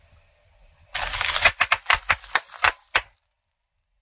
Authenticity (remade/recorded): recorded